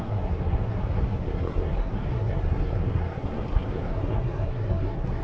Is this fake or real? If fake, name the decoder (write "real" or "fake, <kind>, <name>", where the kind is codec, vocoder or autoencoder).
fake, codec, SNAC